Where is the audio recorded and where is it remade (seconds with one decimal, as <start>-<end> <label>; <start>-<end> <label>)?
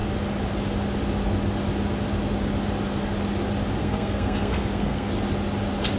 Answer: 0.0-3.8 recorded; 3.8-5.1 remade; 5.1-6.0 recorded